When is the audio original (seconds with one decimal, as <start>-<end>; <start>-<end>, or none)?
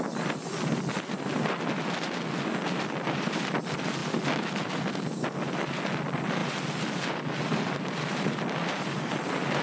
0.0-9.6